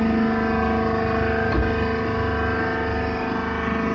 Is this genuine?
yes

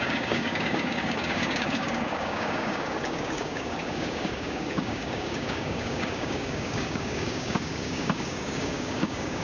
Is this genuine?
no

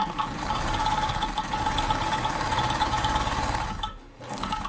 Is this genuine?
no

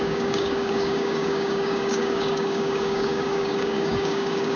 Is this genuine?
no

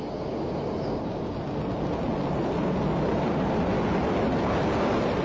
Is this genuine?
yes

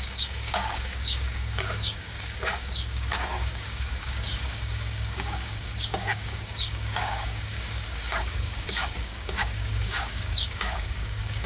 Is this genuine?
no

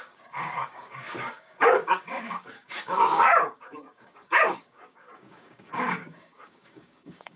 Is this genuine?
no